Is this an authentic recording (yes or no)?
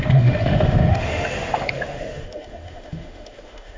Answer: no